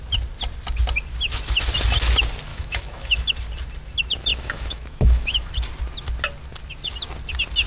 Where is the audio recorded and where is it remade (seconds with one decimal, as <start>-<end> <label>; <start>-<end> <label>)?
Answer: 0.0-2.5 recorded; 2.5-3.2 remade; 3.2-4.3 recorded; 4.3-5.5 remade; 5.5-7.7 recorded